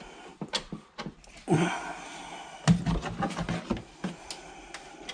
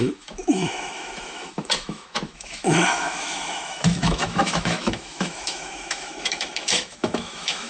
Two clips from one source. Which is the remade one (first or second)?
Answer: second